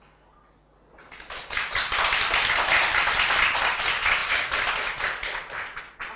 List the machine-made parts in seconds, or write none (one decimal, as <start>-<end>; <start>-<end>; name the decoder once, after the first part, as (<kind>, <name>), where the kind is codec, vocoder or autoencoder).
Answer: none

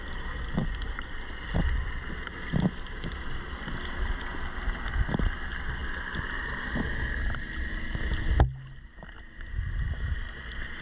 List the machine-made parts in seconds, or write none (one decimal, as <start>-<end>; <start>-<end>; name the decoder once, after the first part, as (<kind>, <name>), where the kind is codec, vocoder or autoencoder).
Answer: none

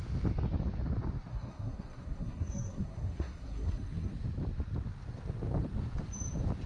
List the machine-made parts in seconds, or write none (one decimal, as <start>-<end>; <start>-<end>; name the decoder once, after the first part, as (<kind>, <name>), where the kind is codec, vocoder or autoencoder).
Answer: 1.3-4.1 (codec, SNAC)